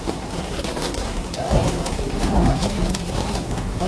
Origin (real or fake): fake